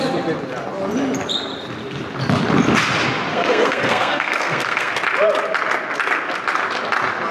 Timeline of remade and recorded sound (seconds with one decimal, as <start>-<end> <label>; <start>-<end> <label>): 0.0-3.3 recorded; 3.3-4.9 remade; 4.9-7.3 recorded